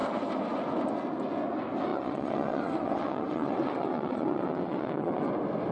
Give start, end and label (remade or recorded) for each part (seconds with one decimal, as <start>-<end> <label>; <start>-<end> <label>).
0.0-1.9 recorded; 1.9-5.3 remade; 5.3-5.7 recorded